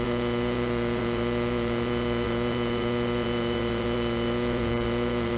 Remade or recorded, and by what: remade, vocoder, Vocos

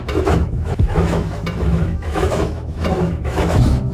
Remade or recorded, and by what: remade, autoencoder, DAC-VAE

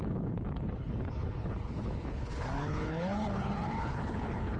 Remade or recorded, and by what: remade, codec, HILCodec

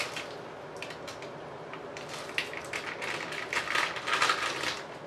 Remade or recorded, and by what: recorded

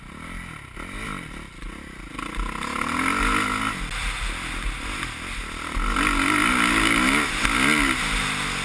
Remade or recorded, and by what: recorded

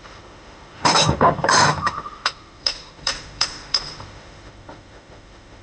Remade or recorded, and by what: remade, autoencoder, DAC-VAE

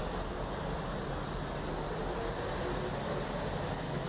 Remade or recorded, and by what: recorded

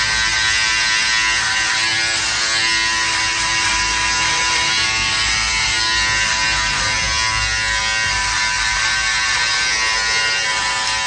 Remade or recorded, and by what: recorded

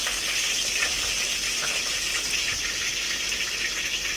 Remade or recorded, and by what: recorded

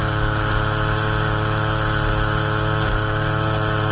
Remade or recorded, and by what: recorded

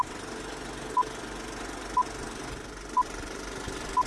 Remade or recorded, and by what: recorded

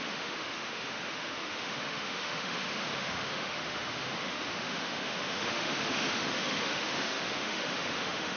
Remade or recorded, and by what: remade, autoencoder, DAC-VAE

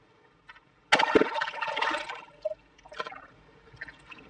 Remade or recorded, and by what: recorded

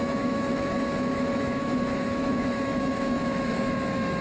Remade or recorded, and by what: remade, autoencoder, DAC-VAE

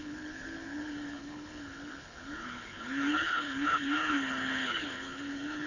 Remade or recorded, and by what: remade, codec, HILCodec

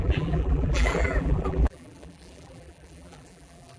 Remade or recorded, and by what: remade, vocoder, BigVGAN v2